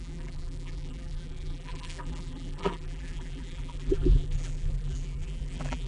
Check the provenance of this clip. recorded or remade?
remade